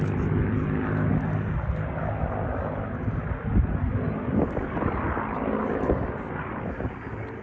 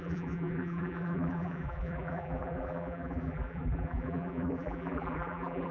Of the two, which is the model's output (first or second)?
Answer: second